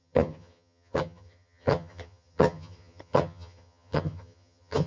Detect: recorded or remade remade